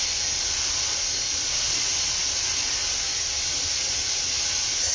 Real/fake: real